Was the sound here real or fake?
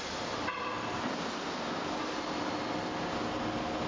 real